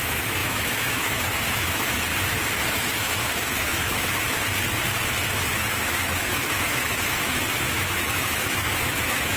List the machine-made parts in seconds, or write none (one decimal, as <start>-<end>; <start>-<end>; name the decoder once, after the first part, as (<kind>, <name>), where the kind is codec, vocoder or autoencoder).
0.0-2.1 (autoencoder, DAC-VAE); 2.7-3.9; 5.6-9.4